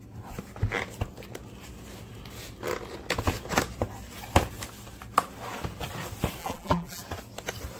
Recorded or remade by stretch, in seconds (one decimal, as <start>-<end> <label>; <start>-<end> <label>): 0.0-6.4 recorded; 6.4-7.0 remade; 7.0-7.8 recorded